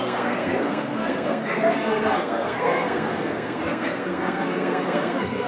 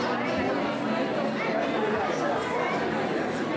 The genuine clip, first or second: second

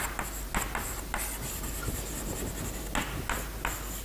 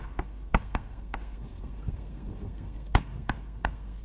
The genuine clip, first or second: first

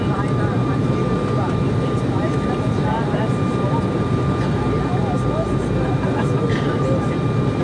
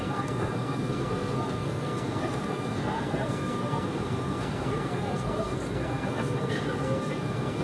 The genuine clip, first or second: first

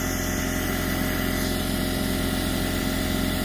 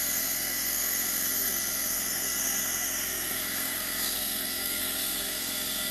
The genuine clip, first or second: first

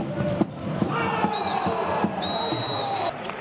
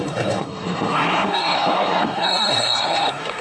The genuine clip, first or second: first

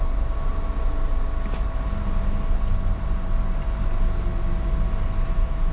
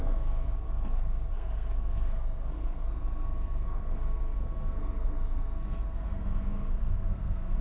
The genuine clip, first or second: first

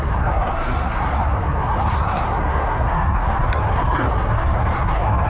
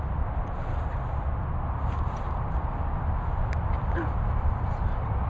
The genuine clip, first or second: second